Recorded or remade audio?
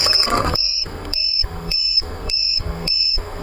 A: remade